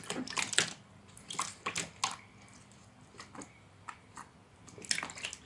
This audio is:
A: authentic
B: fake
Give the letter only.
A